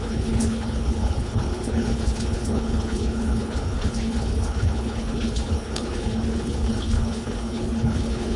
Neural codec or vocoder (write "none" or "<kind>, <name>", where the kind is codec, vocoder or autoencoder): codec, HILCodec